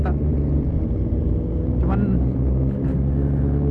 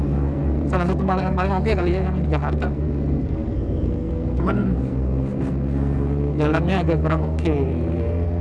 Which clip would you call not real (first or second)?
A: second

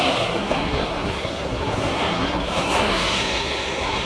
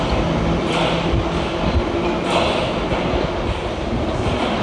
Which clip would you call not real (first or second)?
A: first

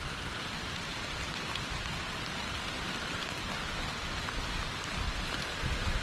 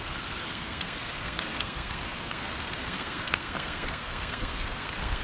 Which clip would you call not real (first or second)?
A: second